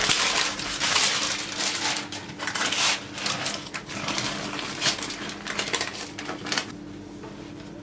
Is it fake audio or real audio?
real